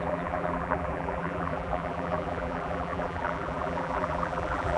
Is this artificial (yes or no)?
yes